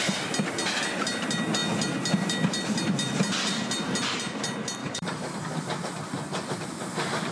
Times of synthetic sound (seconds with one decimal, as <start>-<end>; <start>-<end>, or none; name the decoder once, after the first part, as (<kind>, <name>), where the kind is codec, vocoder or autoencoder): 4.8-5.5 (codec, DAC)